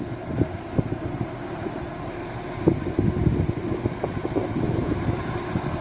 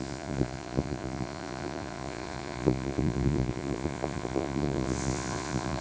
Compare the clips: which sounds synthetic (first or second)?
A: second